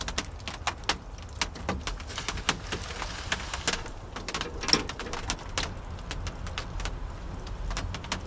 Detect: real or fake real